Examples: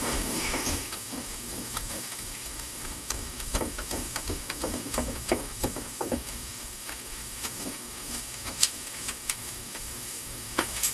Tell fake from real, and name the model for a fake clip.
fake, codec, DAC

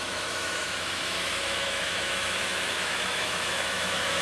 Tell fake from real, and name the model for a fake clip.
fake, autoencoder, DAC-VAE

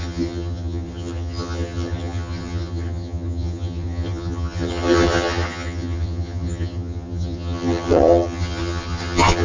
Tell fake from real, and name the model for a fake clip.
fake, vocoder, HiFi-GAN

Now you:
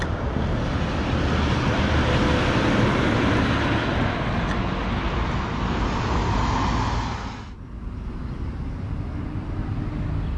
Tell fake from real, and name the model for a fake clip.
real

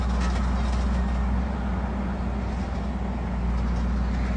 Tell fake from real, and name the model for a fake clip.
real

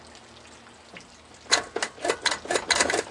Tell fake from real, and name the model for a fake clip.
real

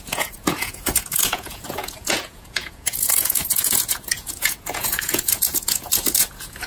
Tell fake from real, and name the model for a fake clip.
fake, vocoder, Vocos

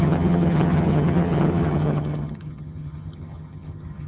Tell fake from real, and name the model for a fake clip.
fake, vocoder, HiFi-GAN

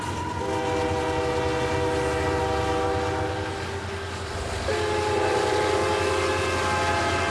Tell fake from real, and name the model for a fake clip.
real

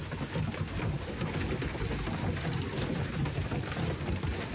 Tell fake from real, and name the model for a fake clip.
real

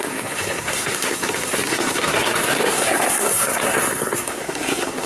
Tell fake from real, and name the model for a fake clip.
fake, codec, SNAC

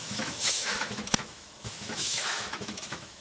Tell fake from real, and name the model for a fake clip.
fake, autoencoder, DAC-VAE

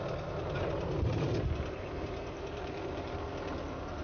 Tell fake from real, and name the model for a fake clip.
fake, vocoder, BigVGAN v2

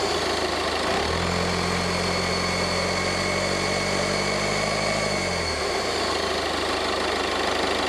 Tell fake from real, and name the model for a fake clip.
real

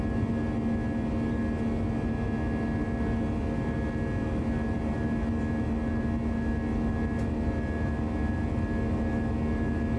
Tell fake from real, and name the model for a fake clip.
real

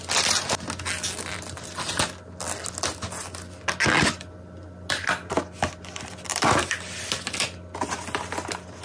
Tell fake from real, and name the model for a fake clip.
real